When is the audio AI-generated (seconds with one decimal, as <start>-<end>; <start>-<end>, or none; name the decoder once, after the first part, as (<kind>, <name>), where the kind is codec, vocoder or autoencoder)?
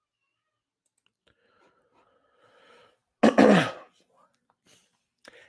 none